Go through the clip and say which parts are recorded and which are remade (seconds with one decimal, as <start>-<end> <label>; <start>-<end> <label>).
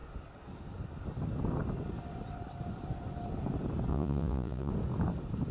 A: 0.0-3.9 recorded; 3.9-4.7 remade; 4.7-5.5 recorded